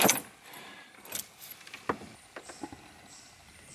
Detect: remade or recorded recorded